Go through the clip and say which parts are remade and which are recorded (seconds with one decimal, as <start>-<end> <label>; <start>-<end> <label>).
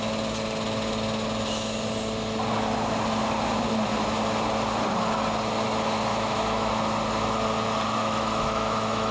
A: 0.0-6.1 recorded; 6.1-6.7 remade; 6.7-8.0 recorded; 8.0-9.1 remade